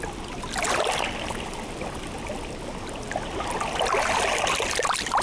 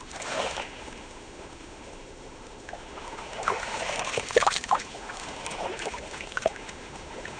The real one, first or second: first